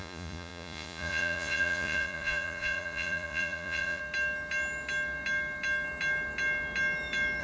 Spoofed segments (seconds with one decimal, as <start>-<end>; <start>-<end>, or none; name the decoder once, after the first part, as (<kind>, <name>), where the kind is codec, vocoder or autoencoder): 0.0-4.0 (vocoder, Vocos)